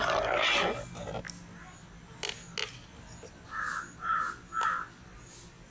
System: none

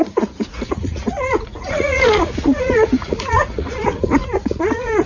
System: vocoder, Vocos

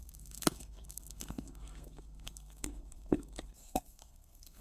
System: codec, SNAC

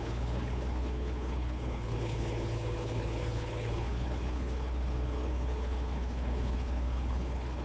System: codec, HILCodec